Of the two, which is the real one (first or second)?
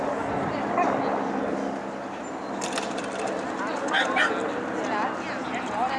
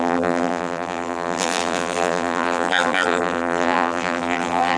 first